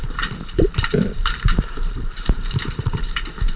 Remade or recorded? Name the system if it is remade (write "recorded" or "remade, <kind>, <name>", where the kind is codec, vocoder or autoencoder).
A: remade, vocoder, BigVGAN v2